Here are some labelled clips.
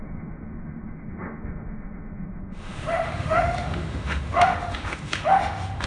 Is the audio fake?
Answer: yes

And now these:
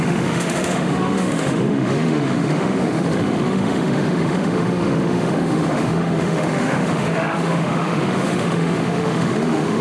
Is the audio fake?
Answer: yes